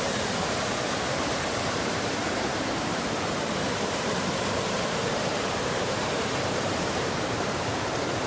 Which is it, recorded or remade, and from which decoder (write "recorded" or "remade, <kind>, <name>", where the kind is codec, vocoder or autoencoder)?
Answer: remade, vocoder, BigVGAN v2